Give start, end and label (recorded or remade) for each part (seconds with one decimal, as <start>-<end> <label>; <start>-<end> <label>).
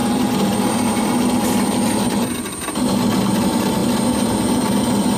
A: 0.0-5.2 recorded